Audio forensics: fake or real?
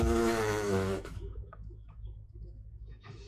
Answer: fake